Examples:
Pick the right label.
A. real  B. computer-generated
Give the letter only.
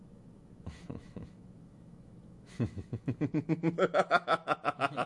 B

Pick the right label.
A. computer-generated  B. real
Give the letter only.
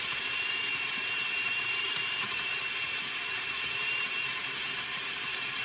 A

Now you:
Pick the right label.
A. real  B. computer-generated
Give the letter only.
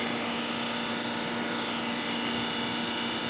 A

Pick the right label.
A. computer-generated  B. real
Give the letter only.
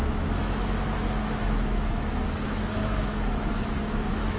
A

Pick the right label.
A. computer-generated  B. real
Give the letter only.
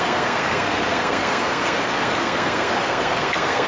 A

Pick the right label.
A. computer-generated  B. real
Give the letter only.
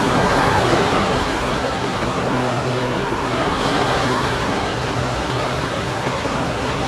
A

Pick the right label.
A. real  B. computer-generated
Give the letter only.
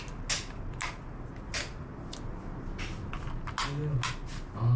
A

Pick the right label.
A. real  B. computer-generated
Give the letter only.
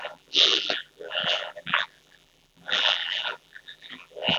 B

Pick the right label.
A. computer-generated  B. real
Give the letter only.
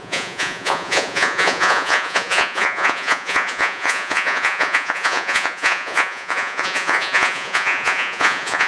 A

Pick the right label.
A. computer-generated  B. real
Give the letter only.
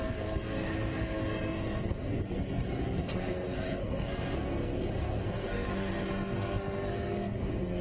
A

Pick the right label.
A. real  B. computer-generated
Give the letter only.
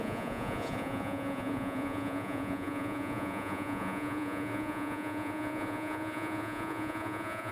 B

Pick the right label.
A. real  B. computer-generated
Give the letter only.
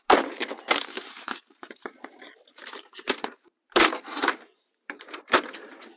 B